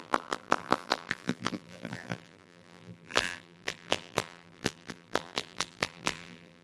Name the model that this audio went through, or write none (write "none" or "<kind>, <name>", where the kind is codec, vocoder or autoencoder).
vocoder, BigVGAN v2